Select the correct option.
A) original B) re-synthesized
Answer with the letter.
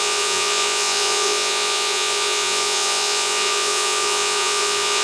B